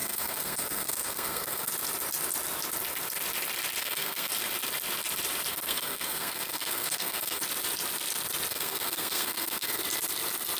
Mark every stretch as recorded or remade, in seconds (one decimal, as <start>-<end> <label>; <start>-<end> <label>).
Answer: 0.0-1.7 remade; 1.7-3.8 recorded; 3.8-4.3 remade; 4.3-5.5 recorded; 5.5-7.4 remade; 7.4-8.5 recorded; 8.5-9.8 remade; 9.8-10.6 recorded